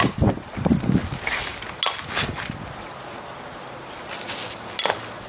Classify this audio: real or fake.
real